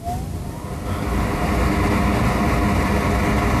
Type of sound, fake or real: real